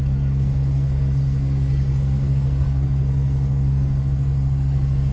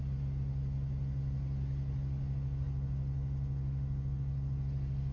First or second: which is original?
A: second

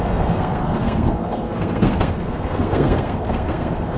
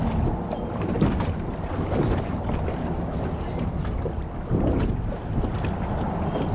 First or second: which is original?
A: second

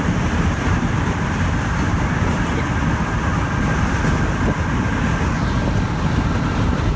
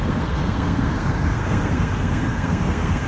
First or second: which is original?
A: first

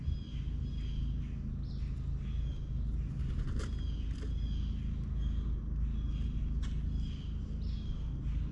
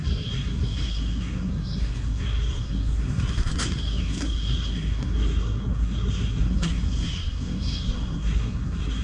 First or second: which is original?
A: first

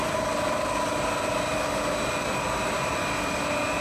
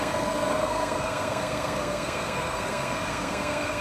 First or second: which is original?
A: first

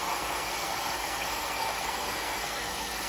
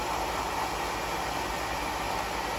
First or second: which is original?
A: second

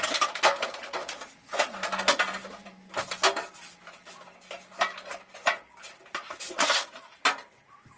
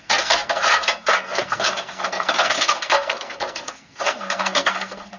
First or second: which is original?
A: first